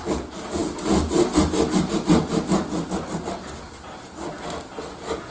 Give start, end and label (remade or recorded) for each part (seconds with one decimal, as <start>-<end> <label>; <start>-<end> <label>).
0.0-5.3 recorded